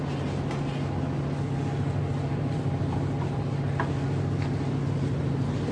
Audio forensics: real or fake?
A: real